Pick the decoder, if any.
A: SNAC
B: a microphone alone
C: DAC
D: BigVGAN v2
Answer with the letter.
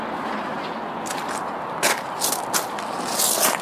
B